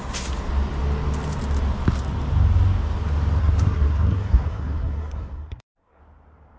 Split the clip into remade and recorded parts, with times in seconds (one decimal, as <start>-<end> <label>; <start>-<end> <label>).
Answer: 0.0-3.4 recorded; 3.4-6.0 remade; 6.0-6.6 recorded